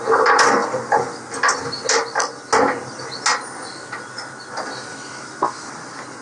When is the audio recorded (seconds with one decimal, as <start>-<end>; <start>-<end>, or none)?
0.0-4.9; 5.7-6.2